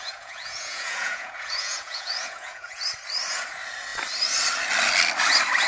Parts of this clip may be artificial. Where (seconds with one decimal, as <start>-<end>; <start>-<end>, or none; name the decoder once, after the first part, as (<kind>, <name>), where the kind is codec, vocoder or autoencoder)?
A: 0.0-2.8 (vocoder, Vocos)